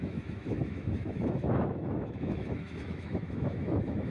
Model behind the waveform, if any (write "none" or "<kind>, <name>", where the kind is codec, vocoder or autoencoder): autoencoder, DAC-VAE